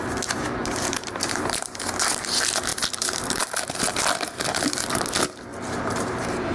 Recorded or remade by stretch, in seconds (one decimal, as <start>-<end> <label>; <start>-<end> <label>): 0.0-0.6 recorded; 0.6-1.8 remade; 1.8-2.7 recorded; 2.7-3.4 remade; 3.4-5.5 recorded; 5.5-6.5 remade